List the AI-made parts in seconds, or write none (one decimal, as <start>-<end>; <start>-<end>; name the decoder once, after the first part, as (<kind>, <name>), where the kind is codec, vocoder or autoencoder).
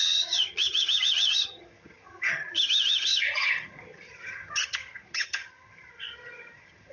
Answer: 0.0-6.9 (vocoder, HiFi-GAN)